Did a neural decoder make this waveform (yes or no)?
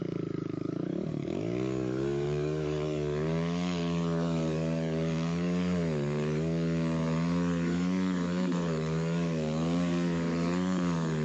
yes